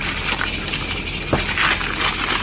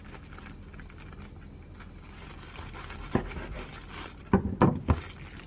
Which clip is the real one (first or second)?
first